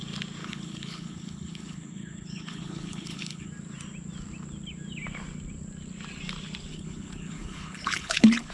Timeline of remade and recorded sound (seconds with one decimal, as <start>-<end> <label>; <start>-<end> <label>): 0.0-0.4 recorded; 0.4-3.5 remade; 3.5-6.7 recorded; 6.7-8.5 remade